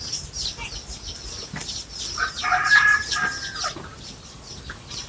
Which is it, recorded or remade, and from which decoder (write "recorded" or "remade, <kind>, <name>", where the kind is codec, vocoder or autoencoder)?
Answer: recorded